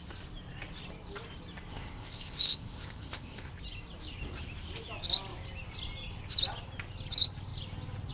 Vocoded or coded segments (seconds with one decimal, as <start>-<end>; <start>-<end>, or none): 1.7-3.5